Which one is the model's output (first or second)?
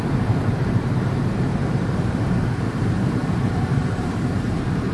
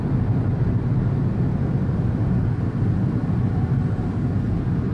first